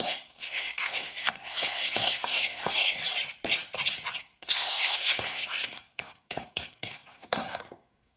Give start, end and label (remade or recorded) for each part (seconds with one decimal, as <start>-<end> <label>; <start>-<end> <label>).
0.0-3.0 remade; 3.0-4.2 recorded; 4.2-8.2 remade

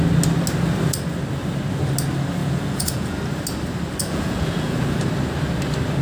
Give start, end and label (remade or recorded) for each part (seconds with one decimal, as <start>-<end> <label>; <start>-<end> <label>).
0.0-2.4 recorded; 2.4-3.2 remade; 3.2-4.0 recorded; 4.0-5.0 remade; 5.0-6.0 recorded

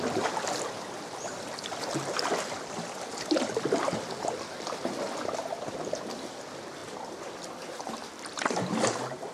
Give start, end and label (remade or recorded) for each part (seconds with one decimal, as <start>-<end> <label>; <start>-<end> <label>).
0.0-6.8 recorded; 6.8-8.7 remade; 8.7-9.3 recorded

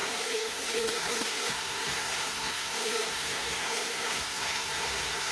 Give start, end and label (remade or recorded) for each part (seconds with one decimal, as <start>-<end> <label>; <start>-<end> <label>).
0.0-5.3 remade

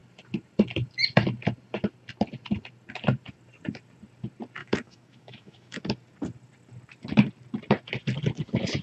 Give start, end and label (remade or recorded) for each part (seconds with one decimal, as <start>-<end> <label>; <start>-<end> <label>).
0.0-4.6 recorded; 4.6-5.8 remade; 5.8-8.8 recorded

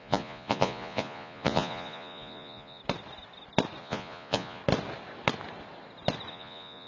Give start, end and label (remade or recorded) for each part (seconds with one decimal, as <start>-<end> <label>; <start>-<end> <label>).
0.0-2.8 remade; 2.8-3.8 recorded; 3.8-4.6 remade; 4.6-6.3 recorded; 6.3-6.9 remade

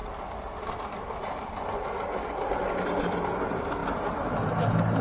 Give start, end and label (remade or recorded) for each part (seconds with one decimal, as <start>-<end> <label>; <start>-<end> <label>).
0.0-5.0 recorded

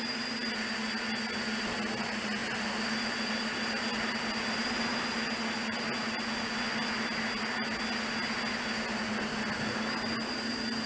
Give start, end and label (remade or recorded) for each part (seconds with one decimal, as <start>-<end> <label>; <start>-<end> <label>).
0.0-10.9 recorded